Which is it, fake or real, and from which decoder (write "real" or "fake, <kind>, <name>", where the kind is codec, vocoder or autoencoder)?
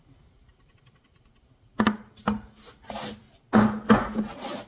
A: real